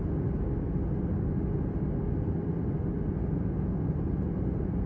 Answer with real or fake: real